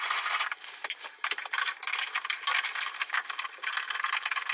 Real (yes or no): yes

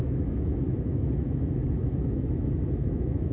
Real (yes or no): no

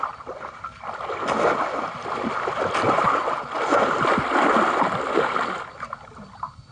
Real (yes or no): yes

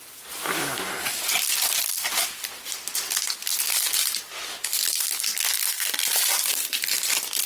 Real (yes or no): yes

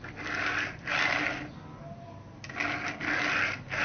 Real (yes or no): yes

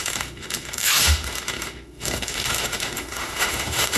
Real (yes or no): no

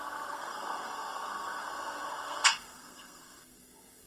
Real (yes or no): no